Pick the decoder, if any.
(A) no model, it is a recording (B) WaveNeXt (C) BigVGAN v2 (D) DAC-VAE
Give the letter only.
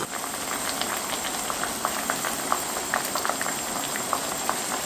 A